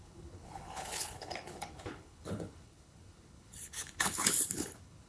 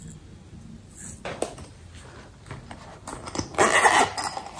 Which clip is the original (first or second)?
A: second